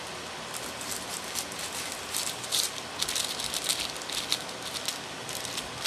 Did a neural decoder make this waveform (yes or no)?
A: no